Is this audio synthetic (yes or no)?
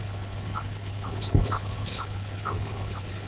yes